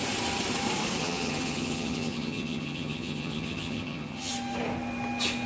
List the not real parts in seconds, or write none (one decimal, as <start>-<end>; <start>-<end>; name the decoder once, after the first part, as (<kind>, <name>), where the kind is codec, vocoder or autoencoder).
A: 1.0-4.3 (vocoder, HiFi-GAN)